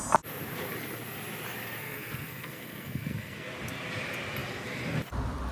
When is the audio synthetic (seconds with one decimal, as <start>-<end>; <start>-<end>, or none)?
1.8-3.5